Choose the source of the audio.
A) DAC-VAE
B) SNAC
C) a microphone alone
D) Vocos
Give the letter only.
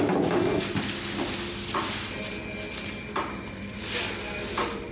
C